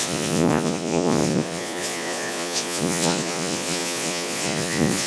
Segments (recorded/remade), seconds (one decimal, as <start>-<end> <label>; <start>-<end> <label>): 0.0-5.1 remade